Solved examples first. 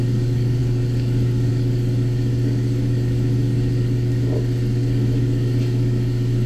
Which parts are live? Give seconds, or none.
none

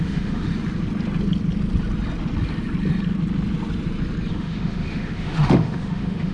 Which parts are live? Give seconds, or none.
0.5-4.3

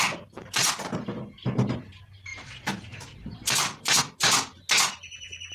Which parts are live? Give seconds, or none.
0.0-2.3; 4.0-5.5

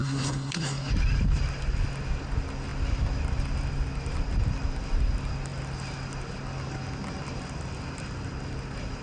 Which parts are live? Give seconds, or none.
0.9-9.0

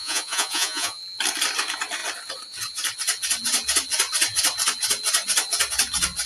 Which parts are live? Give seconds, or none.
1.0-6.3

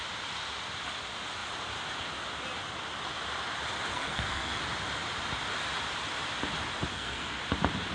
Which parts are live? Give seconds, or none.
0.0-3.9; 4.6-6.9; 7.4-7.9